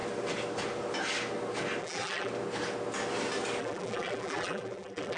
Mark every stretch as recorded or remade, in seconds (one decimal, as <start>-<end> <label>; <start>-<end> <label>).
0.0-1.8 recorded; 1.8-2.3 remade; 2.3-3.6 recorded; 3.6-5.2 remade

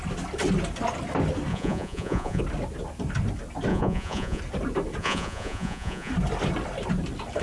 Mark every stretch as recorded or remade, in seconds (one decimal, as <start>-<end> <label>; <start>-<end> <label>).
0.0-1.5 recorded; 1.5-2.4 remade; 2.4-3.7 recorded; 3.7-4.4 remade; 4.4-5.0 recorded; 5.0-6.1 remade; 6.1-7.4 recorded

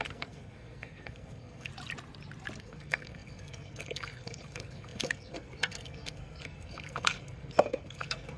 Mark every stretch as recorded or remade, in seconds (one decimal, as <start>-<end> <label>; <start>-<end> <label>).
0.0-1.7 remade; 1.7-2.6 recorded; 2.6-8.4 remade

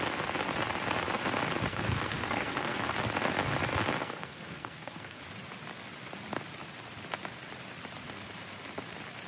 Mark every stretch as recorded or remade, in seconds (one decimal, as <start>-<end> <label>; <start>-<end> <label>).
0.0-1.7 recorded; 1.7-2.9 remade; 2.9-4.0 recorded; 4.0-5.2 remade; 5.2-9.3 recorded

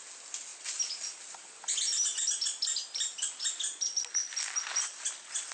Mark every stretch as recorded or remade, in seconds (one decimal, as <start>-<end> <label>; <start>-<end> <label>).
0.0-5.5 recorded

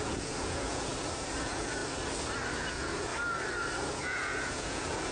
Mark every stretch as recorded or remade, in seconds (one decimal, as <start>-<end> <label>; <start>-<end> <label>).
0.0-0.9 remade; 0.9-1.4 recorded; 1.4-1.8 remade; 1.8-2.7 recorded; 2.7-3.1 remade; 3.1-3.9 recorded; 3.9-5.1 remade

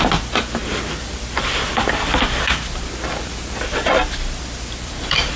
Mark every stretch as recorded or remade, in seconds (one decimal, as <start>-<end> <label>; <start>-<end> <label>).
0.0-5.4 recorded